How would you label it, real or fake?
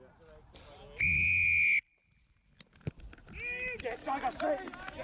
real